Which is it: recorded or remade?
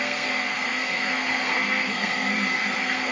remade